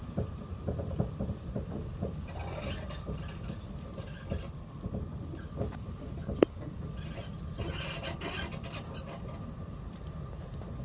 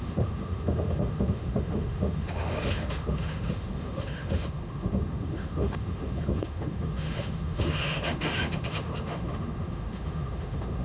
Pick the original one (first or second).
first